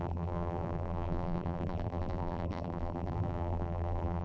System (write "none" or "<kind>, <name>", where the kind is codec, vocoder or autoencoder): vocoder, BigVGAN v2